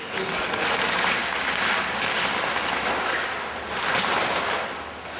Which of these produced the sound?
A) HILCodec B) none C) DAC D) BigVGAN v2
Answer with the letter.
B